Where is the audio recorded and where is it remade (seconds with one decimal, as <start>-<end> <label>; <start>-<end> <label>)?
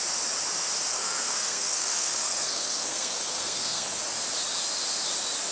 0.0-0.9 recorded; 0.9-4.0 remade; 4.0-5.5 recorded